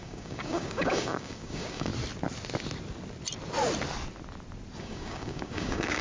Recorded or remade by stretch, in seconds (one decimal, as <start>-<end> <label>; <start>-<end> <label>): 0.0-1.9 remade; 1.9-4.8 recorded; 4.8-6.0 remade

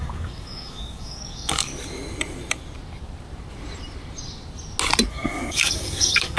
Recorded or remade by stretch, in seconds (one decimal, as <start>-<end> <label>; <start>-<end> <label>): 0.0-1.7 remade; 1.7-5.1 recorded; 5.1-6.4 remade

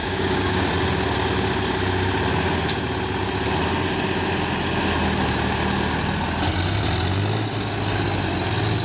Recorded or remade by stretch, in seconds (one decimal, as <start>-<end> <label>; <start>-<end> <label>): 0.0-0.7 remade; 0.7-8.8 recorded

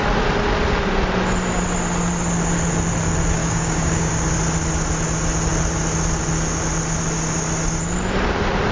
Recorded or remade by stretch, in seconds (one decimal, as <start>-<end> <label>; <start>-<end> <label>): 0.0-3.4 recorded; 3.4-4.1 remade; 4.1-8.7 recorded

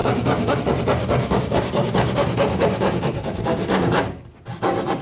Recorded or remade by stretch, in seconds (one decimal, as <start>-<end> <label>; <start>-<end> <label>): 0.0-0.6 remade; 0.6-1.0 recorded; 1.0-4.0 remade; 4.0-5.0 recorded

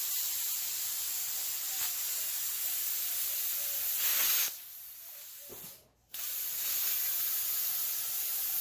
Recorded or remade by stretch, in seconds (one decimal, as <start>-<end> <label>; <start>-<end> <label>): 0.0-8.6 recorded

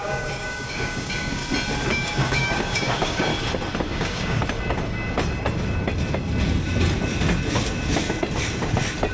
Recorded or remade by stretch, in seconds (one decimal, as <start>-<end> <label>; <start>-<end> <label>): 0.0-1.4 remade; 1.4-1.9 recorded; 1.9-3.3 remade; 3.3-3.9 recorded; 3.9-4.4 remade; 4.4-9.1 recorded